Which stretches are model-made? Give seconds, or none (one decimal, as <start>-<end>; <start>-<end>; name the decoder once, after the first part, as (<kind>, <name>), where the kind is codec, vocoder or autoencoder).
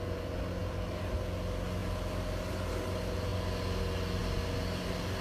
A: none